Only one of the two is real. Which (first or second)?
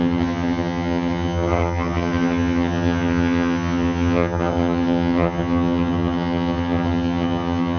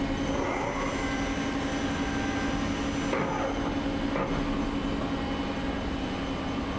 second